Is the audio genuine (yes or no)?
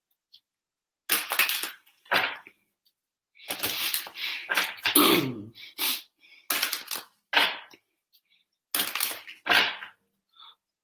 yes